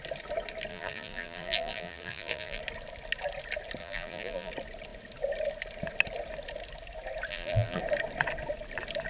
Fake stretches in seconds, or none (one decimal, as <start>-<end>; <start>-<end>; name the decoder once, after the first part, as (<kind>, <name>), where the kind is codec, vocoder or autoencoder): 0.7-2.6 (vocoder, BigVGAN v2); 3.8-4.5; 7.3-7.8